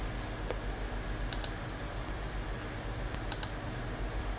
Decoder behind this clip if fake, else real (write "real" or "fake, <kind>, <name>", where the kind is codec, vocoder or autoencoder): real